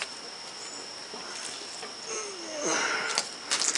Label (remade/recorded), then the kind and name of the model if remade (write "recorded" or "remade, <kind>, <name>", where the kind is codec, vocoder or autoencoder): recorded